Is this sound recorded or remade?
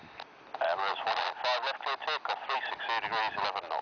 recorded